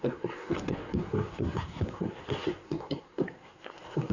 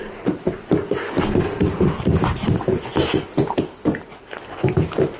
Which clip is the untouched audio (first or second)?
second